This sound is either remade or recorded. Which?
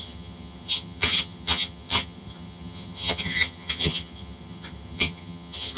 remade